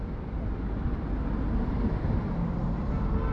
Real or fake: real